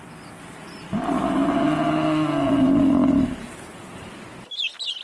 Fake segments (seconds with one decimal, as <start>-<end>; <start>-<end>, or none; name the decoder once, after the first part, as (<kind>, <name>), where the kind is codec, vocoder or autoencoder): none